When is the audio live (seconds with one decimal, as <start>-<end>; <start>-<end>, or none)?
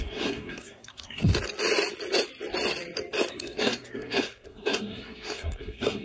1.3-3.3